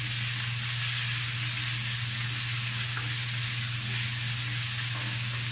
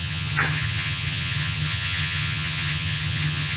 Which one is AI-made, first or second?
second